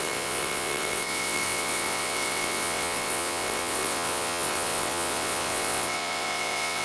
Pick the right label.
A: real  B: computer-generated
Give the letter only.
B